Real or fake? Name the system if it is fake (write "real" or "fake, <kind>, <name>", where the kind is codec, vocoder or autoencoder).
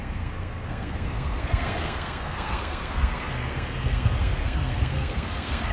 fake, codec, SNAC